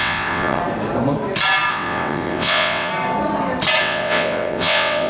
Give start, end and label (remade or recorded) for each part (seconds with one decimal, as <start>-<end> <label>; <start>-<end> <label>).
0.0-0.6 remade; 0.6-1.7 recorded; 1.7-2.9 remade; 2.9-3.8 recorded; 3.8-5.1 remade